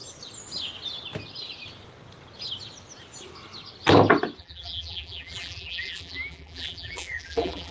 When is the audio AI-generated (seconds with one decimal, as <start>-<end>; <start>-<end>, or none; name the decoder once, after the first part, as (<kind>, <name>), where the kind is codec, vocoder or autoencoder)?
4.4-7.7 (vocoder, BigVGAN v2)